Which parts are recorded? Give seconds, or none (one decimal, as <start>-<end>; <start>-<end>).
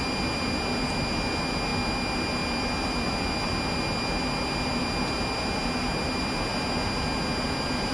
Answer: 0.0-7.9